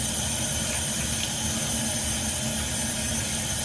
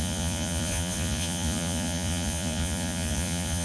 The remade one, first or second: second